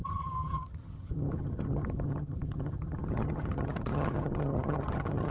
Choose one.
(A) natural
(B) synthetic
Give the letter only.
B